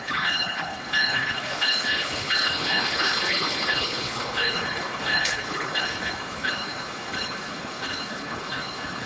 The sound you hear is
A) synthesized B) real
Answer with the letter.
A